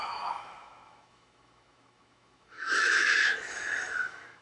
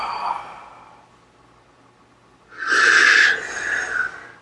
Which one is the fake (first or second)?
first